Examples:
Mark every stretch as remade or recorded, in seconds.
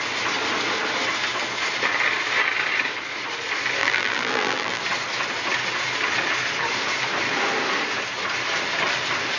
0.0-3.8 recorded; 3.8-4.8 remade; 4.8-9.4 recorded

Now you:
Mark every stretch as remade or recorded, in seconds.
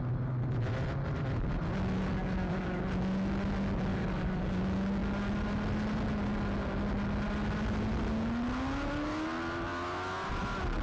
0.0-2.2 recorded; 2.2-2.8 remade; 2.8-3.9 recorded; 3.9-4.6 remade; 4.6-10.8 recorded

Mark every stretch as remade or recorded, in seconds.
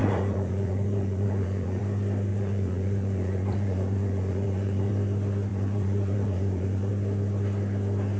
0.0-1.8 remade; 1.8-2.3 recorded; 2.3-4.9 remade; 4.9-5.5 recorded; 5.5-6.9 remade; 6.9-8.2 recorded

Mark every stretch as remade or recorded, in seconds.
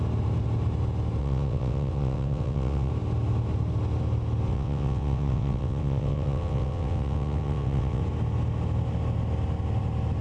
0.0-1.2 recorded; 1.2-2.9 remade; 2.9-4.5 recorded; 4.5-8.0 remade; 8.0-10.2 recorded